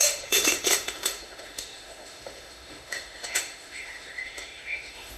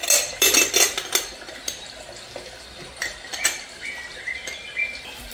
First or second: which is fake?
first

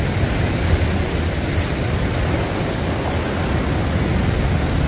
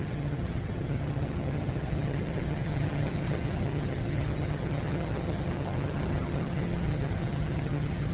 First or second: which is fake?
second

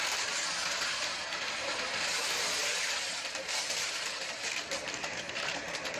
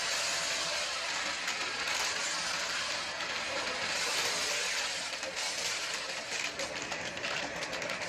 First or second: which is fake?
first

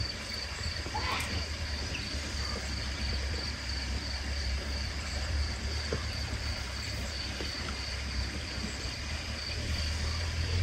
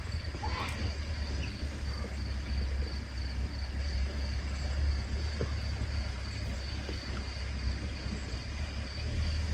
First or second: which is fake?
first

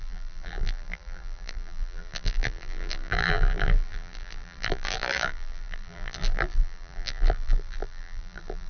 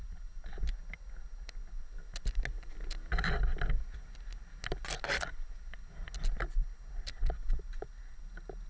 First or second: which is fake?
first